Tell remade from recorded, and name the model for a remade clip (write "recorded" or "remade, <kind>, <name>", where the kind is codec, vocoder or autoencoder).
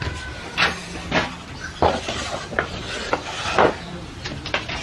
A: recorded